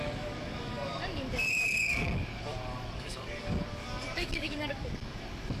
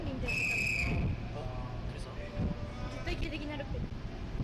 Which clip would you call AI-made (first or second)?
first